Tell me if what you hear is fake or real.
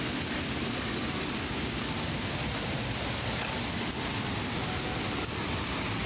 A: real